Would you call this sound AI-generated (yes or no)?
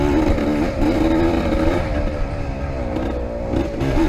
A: no